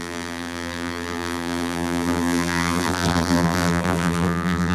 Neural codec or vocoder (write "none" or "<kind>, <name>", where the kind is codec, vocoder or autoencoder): vocoder, BigVGAN v2